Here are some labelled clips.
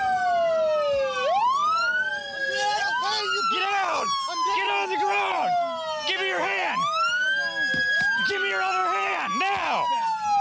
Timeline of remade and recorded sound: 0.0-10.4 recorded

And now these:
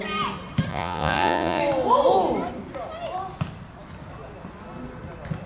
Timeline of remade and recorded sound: 0.0-0.7 recorded; 0.7-1.6 remade; 1.6-5.5 recorded